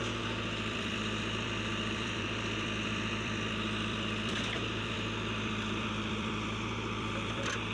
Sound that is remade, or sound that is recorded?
remade